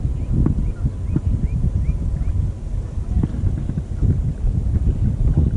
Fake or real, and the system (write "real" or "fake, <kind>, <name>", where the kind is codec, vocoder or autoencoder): real